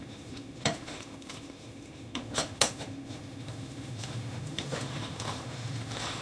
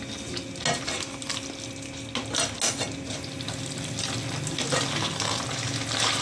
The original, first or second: second